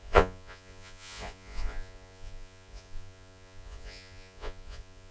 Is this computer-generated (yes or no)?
yes